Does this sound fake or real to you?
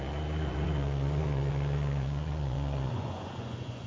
fake